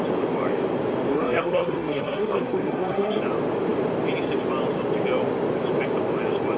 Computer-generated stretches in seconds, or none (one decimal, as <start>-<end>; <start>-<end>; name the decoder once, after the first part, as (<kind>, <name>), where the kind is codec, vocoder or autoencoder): 1.1-3.2 (codec, SNAC)